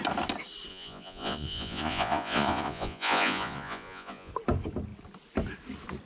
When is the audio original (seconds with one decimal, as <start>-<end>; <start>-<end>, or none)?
0.0-0.7; 4.3-6.0